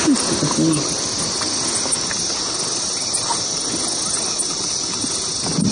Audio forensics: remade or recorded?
recorded